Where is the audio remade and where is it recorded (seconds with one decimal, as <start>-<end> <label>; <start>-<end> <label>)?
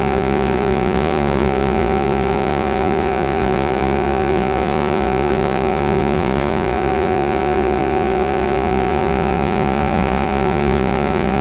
0.0-11.4 remade